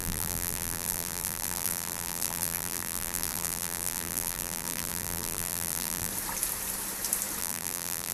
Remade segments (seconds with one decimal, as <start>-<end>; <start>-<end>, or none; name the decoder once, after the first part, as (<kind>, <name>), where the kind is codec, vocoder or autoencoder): 0.0-6.1 (vocoder, BigVGAN v2); 7.4-8.1